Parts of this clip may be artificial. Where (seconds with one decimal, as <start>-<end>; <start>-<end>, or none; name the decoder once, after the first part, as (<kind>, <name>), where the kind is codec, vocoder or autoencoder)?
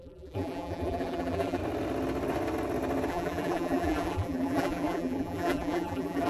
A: 0.0-1.6 (vocoder, BigVGAN v2); 3.1-6.3